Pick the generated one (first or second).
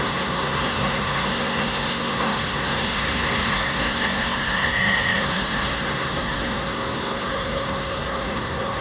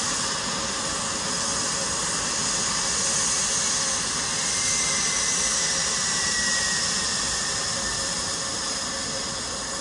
first